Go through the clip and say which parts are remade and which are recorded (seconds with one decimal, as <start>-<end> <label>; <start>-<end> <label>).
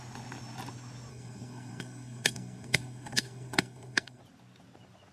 0.0-1.1 recorded; 1.1-4.2 remade; 4.2-5.1 recorded